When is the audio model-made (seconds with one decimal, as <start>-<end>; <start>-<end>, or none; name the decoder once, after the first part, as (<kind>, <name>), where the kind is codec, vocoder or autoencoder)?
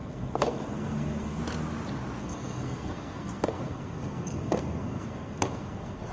0.0-1.4 (codec, SNAC); 2.2-6.1